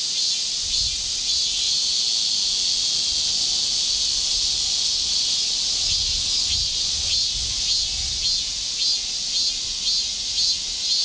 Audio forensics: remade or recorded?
recorded